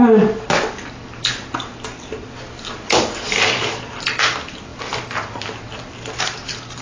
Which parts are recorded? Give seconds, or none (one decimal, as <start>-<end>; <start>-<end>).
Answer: 0.0-6.8

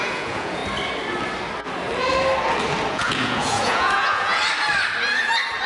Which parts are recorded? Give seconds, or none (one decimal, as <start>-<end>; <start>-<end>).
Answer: 0.6-2.9; 4.4-5.7